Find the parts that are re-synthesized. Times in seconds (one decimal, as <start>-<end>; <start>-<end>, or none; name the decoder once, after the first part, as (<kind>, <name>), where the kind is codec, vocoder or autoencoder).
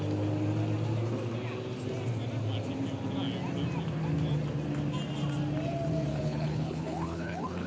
6.1-7.7 (codec, HILCodec)